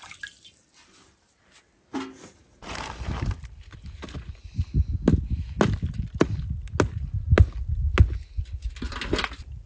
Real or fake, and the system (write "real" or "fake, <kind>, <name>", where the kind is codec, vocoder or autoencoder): real